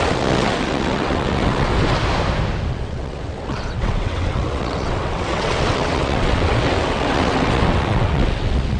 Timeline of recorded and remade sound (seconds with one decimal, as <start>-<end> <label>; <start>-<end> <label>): 0.0-1.7 remade; 1.7-2.7 recorded; 2.7-8.8 remade